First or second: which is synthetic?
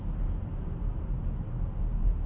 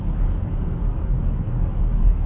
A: second